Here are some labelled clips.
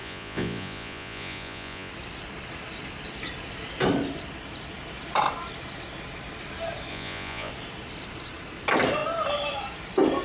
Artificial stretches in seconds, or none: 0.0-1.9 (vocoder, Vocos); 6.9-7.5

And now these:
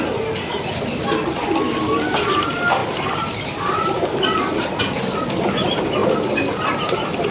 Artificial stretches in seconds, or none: none

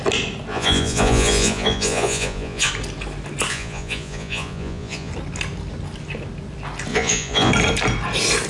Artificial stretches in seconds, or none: 0.5-2.7 (vocoder, Vocos); 3.5-5.1; 6.9-7.5

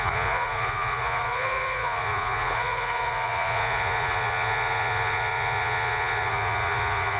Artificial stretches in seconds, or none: 0.0-7.2 (vocoder, Vocos)

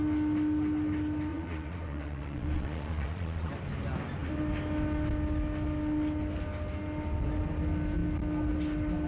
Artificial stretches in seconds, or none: 1.3-3.5 (vocoder, Vocos)

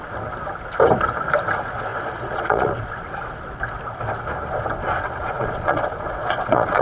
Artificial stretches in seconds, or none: 1.9-2.9 (vocoder, Vocos); 4.8-6.8